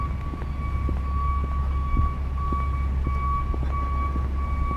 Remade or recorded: recorded